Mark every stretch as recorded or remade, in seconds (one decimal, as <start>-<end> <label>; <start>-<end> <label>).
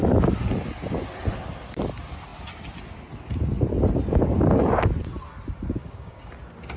0.0-5.8 recorded; 5.8-6.3 remade; 6.3-6.8 recorded